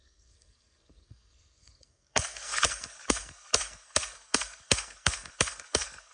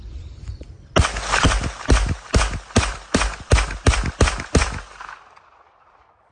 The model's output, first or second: first